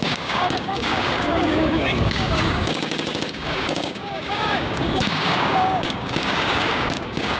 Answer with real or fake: fake